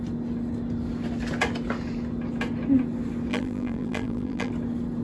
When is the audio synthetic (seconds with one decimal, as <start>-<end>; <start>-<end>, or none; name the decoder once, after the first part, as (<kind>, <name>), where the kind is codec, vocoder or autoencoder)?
3.3-4.5 (vocoder, BigVGAN v2)